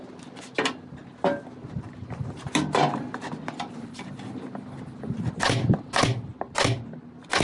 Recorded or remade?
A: recorded